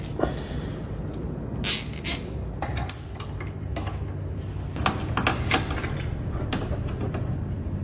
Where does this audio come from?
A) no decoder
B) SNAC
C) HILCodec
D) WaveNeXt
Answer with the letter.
A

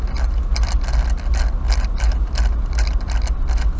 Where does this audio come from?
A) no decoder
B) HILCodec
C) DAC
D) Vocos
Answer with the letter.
A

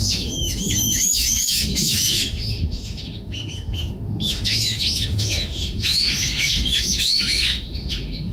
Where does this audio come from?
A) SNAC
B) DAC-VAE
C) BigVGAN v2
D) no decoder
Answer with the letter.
B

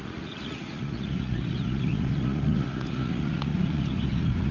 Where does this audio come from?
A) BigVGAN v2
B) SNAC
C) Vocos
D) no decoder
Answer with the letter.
C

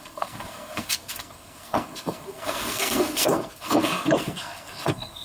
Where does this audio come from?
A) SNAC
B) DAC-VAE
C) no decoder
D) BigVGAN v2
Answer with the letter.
A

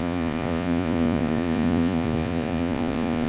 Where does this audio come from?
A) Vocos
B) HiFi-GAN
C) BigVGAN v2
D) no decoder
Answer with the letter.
A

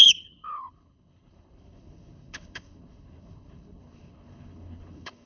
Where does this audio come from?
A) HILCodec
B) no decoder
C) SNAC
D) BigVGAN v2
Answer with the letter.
A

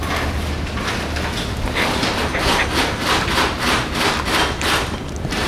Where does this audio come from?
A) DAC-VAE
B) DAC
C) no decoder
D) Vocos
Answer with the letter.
C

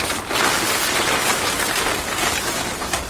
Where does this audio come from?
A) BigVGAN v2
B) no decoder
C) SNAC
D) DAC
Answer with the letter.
B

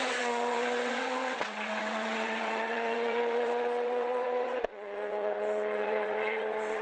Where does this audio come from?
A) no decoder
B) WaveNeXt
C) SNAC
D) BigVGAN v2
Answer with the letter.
B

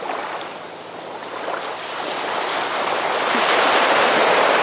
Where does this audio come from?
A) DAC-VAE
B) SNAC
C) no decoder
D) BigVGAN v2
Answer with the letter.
C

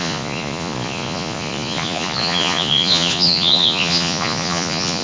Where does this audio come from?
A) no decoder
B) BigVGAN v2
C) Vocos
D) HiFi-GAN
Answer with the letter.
C